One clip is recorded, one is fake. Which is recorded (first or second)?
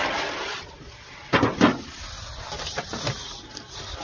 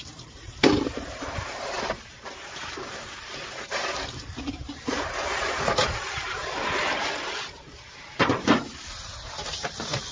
first